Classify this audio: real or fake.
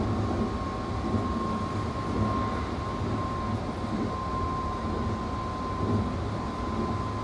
real